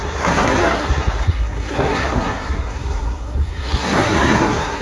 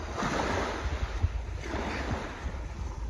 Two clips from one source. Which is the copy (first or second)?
first